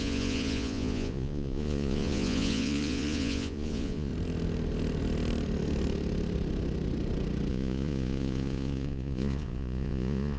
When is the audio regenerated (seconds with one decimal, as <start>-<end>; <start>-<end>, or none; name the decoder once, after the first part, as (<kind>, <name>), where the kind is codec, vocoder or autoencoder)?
0.0-4.1 (vocoder, Vocos); 7.5-10.4